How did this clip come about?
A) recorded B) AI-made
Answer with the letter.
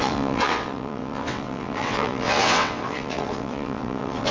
B